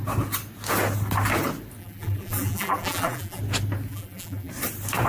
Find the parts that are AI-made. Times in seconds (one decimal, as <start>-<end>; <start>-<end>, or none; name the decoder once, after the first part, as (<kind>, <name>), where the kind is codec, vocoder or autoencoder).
1.8-3.4 (vocoder, BigVGAN v2); 3.9-4.5